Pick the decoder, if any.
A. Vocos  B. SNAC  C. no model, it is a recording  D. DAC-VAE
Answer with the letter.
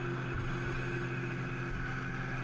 C